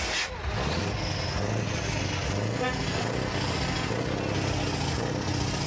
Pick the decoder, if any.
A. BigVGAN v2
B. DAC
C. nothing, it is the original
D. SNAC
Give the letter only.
C